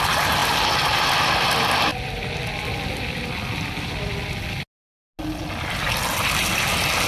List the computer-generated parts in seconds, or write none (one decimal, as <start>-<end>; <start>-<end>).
0.4-1.3; 1.9-2.4